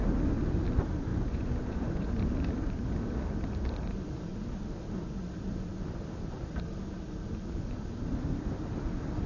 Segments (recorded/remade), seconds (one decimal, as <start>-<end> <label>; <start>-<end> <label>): 0.0-1.1 recorded; 1.1-2.1 remade; 2.1-9.3 recorded